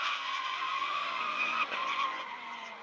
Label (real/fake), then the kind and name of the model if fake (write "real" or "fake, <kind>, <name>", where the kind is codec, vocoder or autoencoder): fake, vocoder, Vocos